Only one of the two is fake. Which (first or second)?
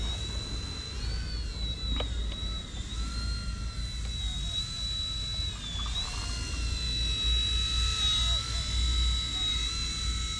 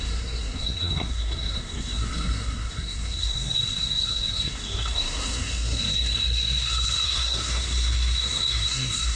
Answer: second